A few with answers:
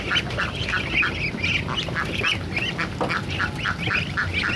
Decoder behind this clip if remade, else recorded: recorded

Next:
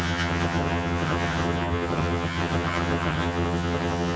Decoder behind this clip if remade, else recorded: remade, vocoder, HiFi-GAN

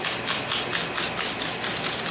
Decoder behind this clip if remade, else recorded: recorded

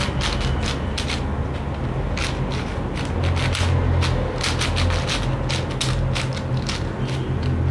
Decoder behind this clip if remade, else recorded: recorded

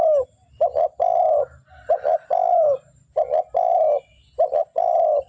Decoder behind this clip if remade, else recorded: recorded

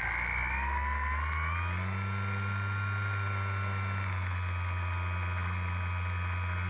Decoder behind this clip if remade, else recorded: recorded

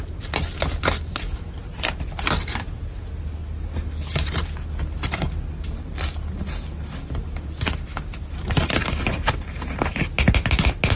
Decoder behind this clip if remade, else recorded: recorded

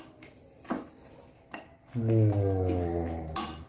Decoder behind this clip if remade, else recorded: recorded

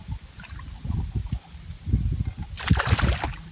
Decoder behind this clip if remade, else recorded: recorded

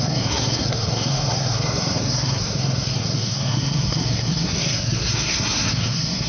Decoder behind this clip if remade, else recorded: remade, codec, SNAC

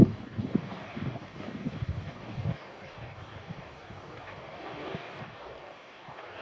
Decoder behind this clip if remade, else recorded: remade, codec, DAC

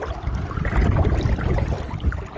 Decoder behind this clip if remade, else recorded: recorded